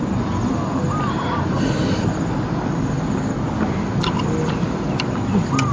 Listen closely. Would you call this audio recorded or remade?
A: recorded